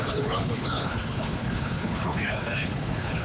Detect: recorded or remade remade